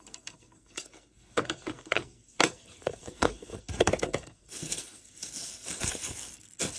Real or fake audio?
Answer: fake